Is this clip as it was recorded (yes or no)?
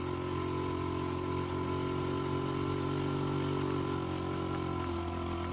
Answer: yes